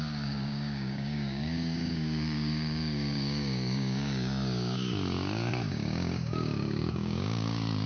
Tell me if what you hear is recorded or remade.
remade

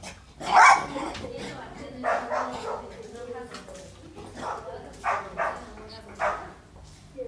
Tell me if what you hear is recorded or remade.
recorded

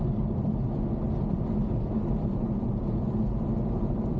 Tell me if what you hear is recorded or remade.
recorded